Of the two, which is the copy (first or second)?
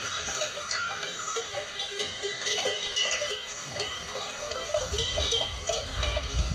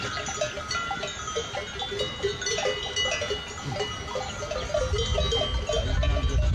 first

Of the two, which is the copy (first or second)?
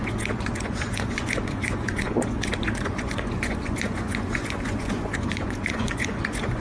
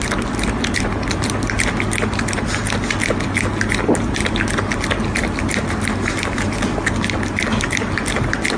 first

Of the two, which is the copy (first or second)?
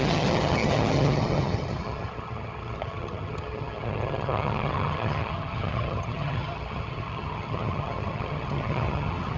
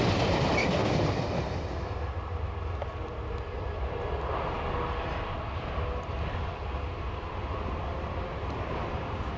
first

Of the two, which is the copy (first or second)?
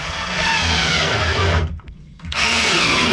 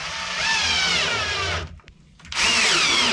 first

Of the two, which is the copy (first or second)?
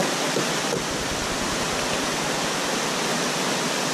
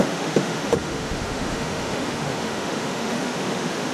second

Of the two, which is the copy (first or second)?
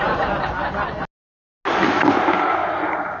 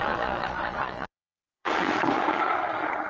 second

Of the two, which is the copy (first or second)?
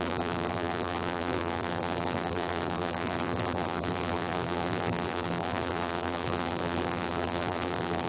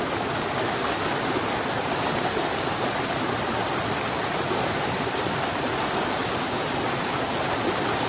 first